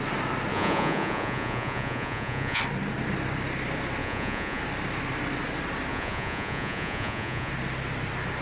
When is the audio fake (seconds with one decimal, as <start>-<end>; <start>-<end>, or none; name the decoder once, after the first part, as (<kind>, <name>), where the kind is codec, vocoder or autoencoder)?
0.5-2.6 (vocoder, Vocos); 4.0-4.6; 5.9-7.5